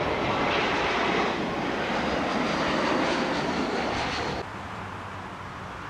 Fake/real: real